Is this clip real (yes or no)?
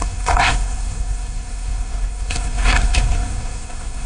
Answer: no